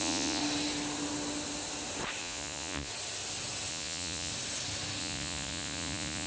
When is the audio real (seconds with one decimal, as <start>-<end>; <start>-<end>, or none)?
0.4-2.2; 2.9-3.7; 4.3-5.0